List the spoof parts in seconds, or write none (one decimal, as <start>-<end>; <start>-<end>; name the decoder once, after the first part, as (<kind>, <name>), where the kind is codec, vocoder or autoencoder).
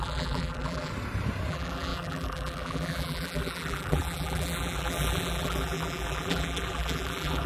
0.0-0.9 (vocoder, BigVGAN v2); 1.5-7.5